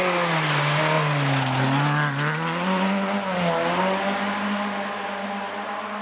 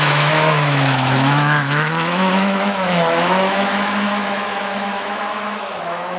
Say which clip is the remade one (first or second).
second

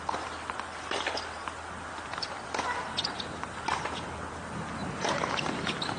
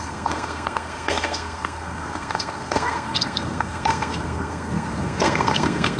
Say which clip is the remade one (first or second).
second